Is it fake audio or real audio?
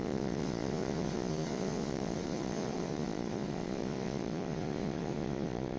fake